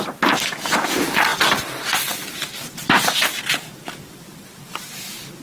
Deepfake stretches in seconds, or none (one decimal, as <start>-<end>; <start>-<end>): none